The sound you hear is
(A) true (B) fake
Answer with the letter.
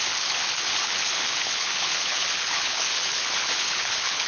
B